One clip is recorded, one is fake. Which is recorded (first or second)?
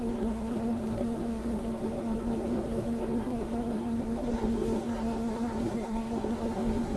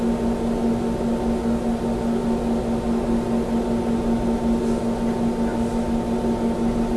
second